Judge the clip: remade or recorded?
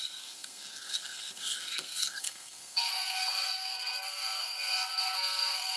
remade